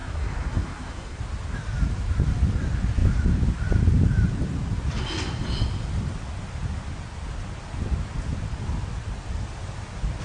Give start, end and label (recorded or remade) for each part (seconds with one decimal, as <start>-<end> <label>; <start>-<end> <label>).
0.0-1.2 remade; 1.2-10.2 recorded

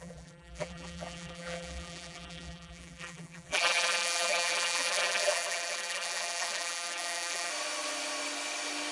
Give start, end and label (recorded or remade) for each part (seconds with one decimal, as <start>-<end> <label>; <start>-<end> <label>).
0.0-7.5 remade; 7.5-8.9 recorded

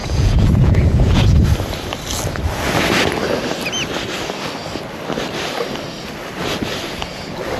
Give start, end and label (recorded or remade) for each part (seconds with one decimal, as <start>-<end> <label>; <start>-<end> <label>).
0.0-1.4 remade; 1.4-7.6 recorded

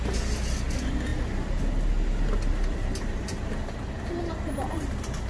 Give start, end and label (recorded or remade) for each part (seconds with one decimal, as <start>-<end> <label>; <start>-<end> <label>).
0.0-5.3 recorded

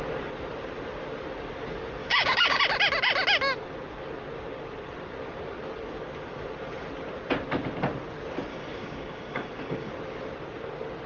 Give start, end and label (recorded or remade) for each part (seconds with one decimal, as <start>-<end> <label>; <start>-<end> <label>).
0.0-2.0 recorded; 2.0-2.6 remade; 2.6-8.5 recorded; 8.5-9.9 remade; 9.9-11.1 recorded

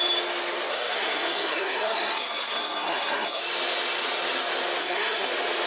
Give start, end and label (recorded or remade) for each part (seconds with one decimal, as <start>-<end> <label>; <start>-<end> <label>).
0.0-0.7 recorded; 0.7-3.4 remade; 3.4-4.8 recorded; 4.8-5.3 remade; 5.3-5.7 recorded

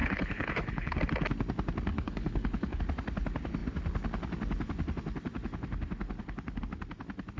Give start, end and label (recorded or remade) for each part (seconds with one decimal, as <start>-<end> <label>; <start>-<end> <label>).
0.0-1.0 remade; 1.0-1.9 recorded; 1.9-2.8 remade; 2.8-7.4 recorded